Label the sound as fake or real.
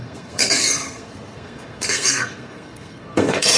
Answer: fake